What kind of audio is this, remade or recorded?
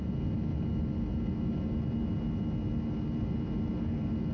recorded